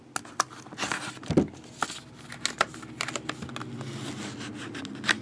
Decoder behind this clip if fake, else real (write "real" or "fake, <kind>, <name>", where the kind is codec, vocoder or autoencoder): real